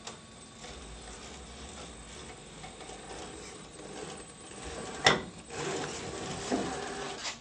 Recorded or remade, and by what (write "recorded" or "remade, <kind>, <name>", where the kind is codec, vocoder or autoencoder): recorded